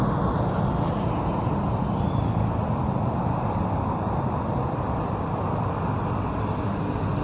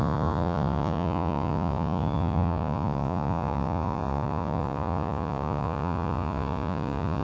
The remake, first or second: second